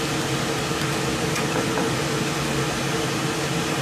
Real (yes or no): yes